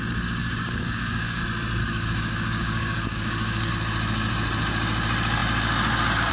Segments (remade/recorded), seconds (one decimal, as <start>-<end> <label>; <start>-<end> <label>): 0.0-0.4 recorded; 0.4-1.4 remade; 1.4-1.8 recorded; 1.8-3.7 remade; 3.7-6.3 recorded